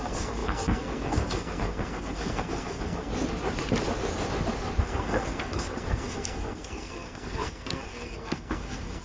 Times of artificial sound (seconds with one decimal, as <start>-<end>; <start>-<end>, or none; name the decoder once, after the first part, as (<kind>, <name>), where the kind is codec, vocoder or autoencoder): 0.0-3.1 (codec, SNAC); 4.8-9.0